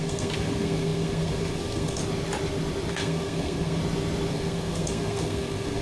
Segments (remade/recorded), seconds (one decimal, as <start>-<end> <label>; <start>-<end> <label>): 0.0-2.0 remade; 2.0-2.9 recorded; 2.9-3.8 remade; 3.8-4.3 recorded; 4.3-5.8 remade